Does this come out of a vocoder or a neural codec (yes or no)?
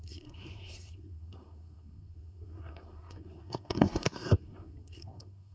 yes